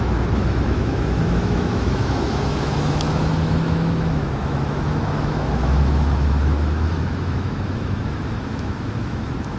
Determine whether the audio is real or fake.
fake